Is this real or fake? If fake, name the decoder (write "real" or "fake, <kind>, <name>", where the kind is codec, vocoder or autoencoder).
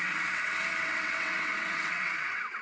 fake, vocoder, WaveNeXt